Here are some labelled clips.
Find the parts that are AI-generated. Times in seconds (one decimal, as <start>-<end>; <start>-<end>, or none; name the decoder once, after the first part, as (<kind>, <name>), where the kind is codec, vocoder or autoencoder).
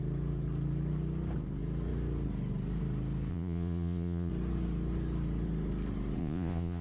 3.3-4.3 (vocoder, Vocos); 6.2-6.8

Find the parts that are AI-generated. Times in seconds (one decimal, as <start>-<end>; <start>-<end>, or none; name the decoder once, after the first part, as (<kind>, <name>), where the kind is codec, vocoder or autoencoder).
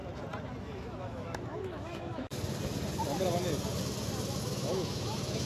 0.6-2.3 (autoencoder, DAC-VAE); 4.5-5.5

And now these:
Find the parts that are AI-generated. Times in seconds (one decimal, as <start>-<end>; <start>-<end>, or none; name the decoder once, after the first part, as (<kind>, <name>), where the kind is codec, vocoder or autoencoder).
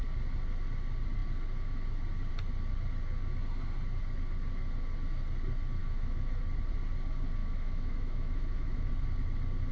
5.8-6.4 (autoencoder, DAC-VAE); 7.4-8.9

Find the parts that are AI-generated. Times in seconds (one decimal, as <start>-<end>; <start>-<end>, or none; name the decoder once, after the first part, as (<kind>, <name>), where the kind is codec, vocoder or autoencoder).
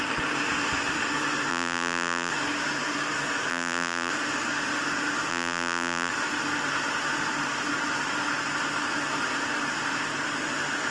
1.5-2.3 (vocoder, BigVGAN v2); 3.5-4.1; 5.3-6.1